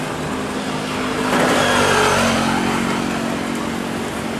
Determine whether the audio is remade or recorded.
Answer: recorded